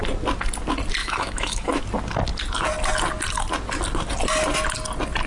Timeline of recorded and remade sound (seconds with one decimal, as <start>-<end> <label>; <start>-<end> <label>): 0.0-1.0 recorded; 1.0-1.8 remade; 1.8-5.3 recorded